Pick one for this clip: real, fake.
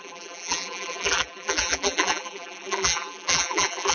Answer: fake